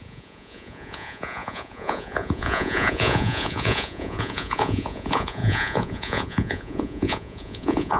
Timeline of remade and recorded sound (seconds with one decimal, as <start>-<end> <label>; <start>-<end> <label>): 0.0-8.0 remade